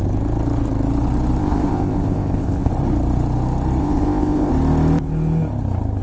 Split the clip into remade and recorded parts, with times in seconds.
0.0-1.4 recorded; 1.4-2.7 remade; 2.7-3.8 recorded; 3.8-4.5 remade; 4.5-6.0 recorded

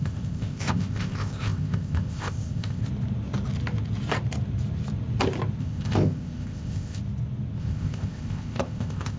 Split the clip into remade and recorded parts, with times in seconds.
0.0-2.8 remade; 2.8-5.6 recorded; 5.6-7.0 remade; 7.0-7.6 recorded; 7.6-9.2 remade

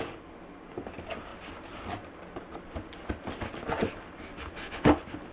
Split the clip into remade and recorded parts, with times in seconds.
0.0-5.3 recorded

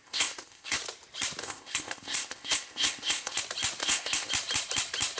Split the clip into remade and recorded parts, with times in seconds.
0.0-0.8 remade; 0.8-1.4 recorded; 1.4-3.4 remade; 3.4-3.8 recorded; 3.8-4.3 remade; 4.3-5.2 recorded

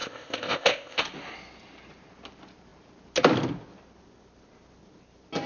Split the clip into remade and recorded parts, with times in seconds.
0.0-1.0 remade; 1.0-5.5 recorded